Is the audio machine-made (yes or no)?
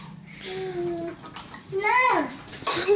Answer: no